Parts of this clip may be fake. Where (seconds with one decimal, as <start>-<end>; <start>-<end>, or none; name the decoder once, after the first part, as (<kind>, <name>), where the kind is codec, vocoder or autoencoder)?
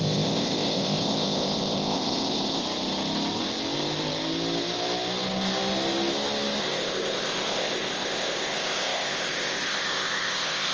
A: 0.0-2.6 (codec, ZipCodec); 6.6-10.7